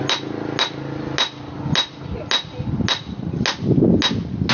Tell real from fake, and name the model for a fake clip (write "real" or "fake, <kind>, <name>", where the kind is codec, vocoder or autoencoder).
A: real